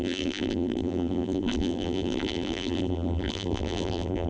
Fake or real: fake